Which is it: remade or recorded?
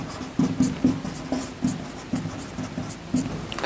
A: remade